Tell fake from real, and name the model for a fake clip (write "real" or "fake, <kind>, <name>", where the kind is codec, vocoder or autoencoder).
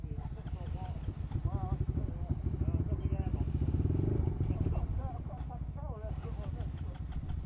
real